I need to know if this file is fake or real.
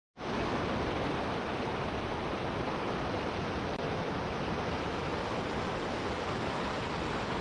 real